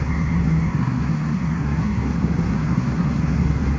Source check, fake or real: fake